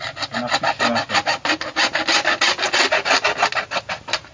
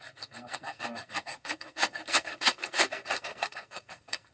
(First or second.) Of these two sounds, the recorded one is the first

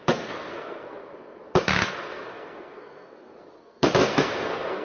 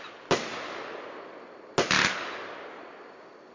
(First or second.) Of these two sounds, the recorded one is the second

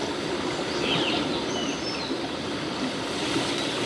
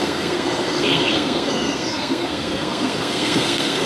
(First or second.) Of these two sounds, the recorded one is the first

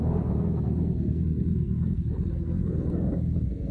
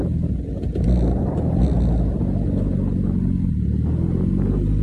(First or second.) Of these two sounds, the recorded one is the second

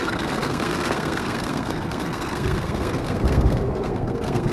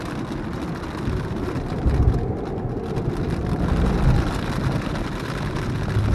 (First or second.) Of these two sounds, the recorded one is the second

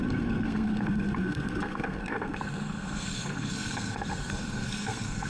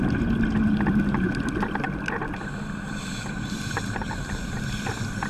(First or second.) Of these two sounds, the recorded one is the second